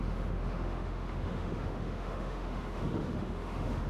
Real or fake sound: fake